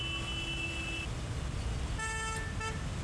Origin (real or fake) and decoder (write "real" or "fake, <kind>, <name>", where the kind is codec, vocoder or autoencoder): real